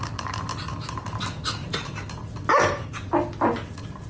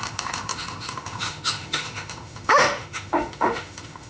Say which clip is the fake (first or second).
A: second